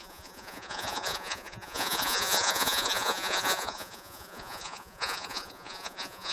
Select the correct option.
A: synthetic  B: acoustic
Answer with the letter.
A